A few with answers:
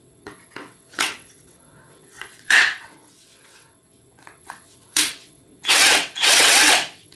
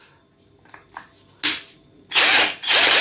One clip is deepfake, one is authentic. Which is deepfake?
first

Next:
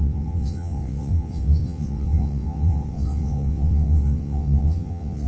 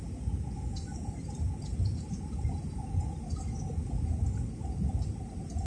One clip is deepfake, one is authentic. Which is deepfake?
first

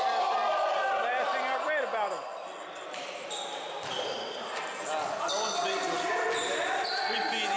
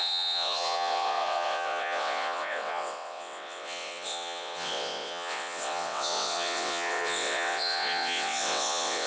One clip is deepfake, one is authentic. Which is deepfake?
second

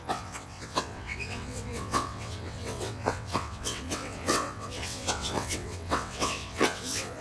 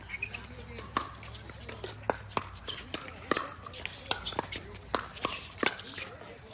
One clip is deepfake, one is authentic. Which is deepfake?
first